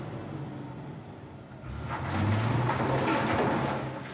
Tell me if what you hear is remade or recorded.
recorded